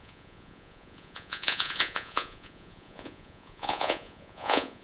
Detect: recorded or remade remade